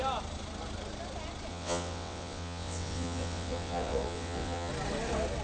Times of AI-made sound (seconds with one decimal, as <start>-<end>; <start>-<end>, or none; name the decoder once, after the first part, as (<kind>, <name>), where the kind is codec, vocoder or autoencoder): 1.5-4.7 (vocoder, WaveNeXt)